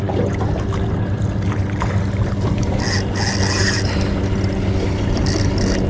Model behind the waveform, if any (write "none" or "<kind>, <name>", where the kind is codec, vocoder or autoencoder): none